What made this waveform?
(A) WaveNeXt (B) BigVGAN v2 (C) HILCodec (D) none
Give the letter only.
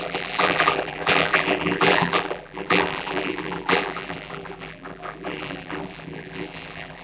B